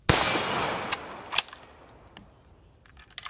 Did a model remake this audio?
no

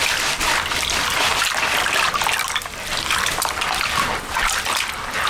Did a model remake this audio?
yes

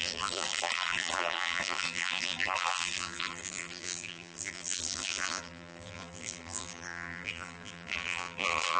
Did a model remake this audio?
yes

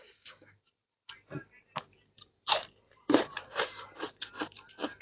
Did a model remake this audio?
yes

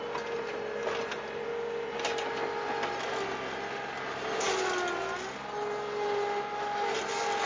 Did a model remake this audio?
no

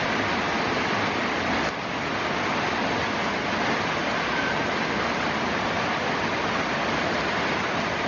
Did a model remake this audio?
no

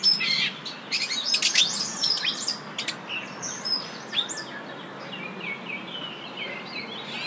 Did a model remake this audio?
no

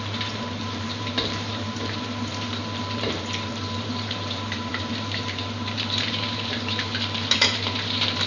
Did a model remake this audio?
yes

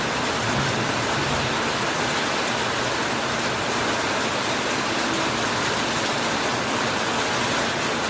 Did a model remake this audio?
no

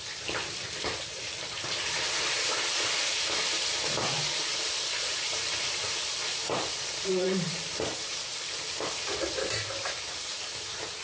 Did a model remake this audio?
yes